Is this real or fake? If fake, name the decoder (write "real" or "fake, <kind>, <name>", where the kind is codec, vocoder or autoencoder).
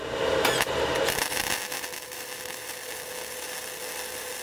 real